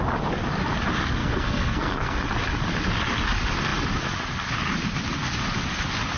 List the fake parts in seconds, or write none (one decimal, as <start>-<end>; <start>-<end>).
1.2-2.2